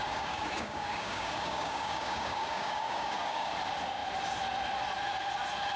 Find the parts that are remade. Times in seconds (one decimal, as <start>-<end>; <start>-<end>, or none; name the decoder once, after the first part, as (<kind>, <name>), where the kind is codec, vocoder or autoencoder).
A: 0.0-3.5 (codec, DAC)